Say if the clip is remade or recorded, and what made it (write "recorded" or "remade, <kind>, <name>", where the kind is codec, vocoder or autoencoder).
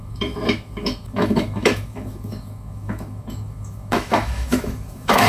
remade, autoencoder, DAC-VAE